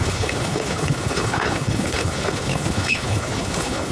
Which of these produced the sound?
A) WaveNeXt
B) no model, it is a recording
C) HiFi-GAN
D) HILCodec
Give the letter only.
D